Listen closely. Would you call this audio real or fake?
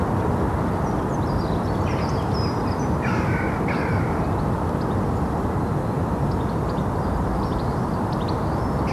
real